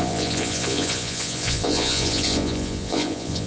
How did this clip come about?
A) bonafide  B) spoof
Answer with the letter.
B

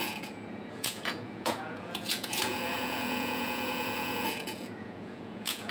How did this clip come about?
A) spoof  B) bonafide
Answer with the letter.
A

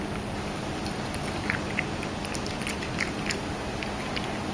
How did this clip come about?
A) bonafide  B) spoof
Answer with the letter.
A